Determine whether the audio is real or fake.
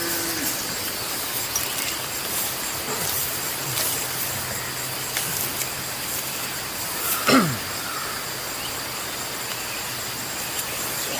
real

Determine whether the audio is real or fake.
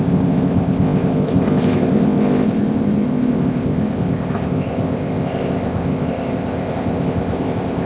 fake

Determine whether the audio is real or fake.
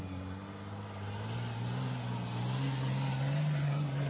real